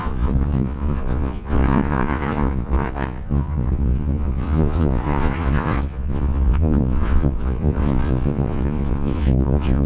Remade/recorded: remade